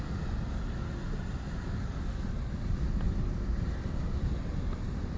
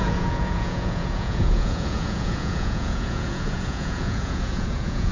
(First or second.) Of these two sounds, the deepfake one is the second